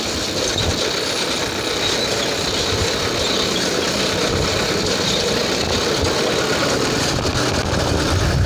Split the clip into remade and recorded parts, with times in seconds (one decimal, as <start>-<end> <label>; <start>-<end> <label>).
0.0-8.5 recorded

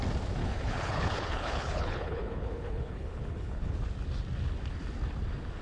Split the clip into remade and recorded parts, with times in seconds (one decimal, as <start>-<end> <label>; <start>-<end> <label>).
0.0-0.4 recorded; 0.4-3.8 remade; 3.8-5.6 recorded

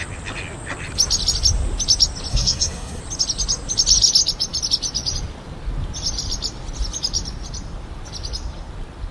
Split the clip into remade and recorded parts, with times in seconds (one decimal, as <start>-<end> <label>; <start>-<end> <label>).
0.0-2.3 recorded; 2.3-3.0 remade; 3.0-9.1 recorded

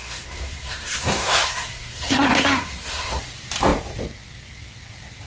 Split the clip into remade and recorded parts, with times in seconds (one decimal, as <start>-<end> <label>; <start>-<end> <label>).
0.0-3.2 remade; 3.2-5.3 recorded

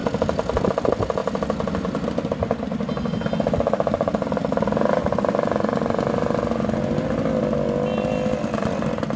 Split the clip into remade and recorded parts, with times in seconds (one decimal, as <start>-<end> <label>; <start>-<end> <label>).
0.0-0.7 remade; 0.7-1.2 recorded; 1.2-1.7 remade; 1.7-5.0 recorded; 5.0-6.1 remade; 6.1-9.2 recorded

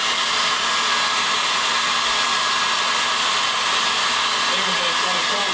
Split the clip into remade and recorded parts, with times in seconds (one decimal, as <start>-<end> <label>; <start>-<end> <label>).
0.0-5.5 recorded

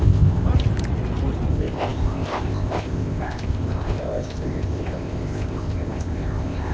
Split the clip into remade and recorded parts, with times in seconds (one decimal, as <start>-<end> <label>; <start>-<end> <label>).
0.0-0.5 remade; 0.5-1.5 recorded; 1.5-6.7 remade

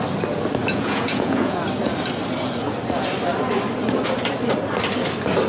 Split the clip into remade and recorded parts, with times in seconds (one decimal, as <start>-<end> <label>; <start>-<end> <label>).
0.0-0.6 recorded; 0.6-1.6 remade; 1.6-5.5 recorded